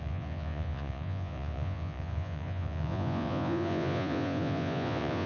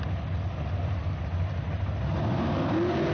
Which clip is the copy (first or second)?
first